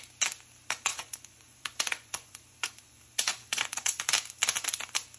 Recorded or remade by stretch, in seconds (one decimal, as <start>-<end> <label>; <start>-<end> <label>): 0.0-0.9 recorded; 0.9-4.0 remade; 4.0-5.2 recorded